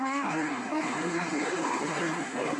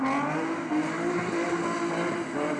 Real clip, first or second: second